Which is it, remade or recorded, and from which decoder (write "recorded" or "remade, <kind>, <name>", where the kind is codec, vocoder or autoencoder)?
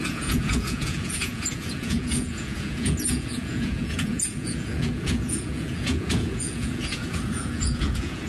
remade, vocoder, Vocos